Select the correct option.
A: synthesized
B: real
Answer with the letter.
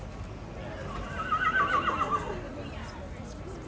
B